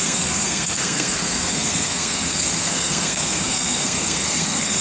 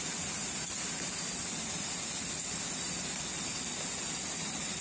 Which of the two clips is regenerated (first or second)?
first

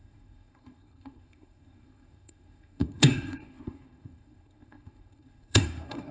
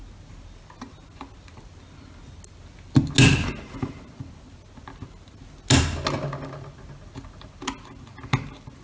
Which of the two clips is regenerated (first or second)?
first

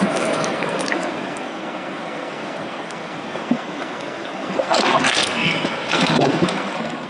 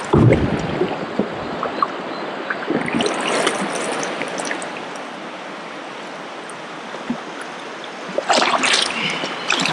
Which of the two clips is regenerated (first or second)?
first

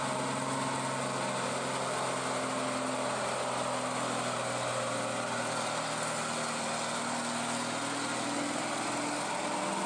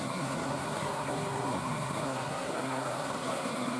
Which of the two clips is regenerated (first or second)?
second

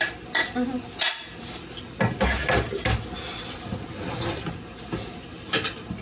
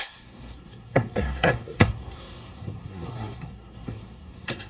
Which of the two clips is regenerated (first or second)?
second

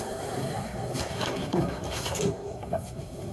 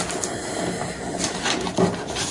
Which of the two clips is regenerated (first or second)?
first